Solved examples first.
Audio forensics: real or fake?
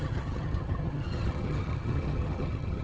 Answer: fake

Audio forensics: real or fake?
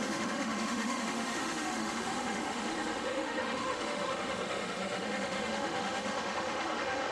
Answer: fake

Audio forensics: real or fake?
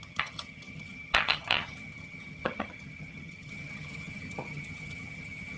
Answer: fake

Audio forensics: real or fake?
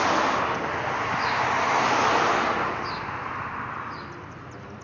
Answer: real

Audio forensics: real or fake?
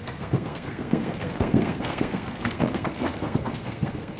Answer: fake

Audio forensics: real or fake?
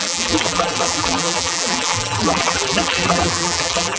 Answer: fake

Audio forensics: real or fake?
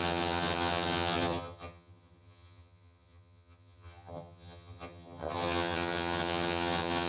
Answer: fake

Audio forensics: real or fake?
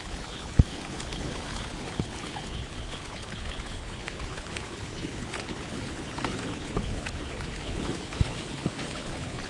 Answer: fake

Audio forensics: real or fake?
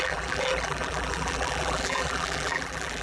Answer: fake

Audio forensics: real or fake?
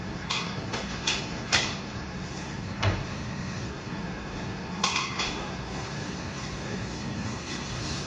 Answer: fake